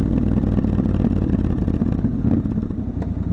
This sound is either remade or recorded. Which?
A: recorded